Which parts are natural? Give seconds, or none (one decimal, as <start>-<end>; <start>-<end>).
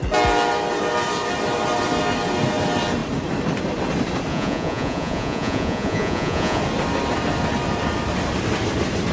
0.0-4.3; 6.6-9.1